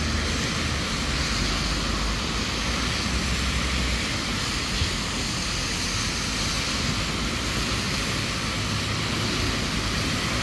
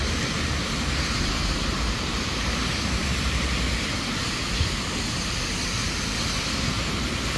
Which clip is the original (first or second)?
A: first